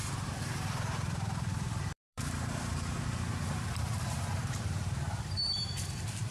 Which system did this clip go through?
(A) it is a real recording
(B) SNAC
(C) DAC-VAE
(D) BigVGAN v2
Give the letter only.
D